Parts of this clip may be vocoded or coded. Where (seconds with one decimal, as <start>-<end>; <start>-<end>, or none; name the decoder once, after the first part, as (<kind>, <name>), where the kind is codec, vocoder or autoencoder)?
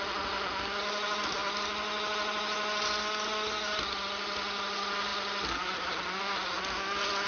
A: none